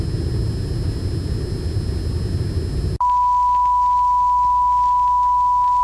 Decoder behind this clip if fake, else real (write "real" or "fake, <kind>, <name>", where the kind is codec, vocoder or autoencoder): real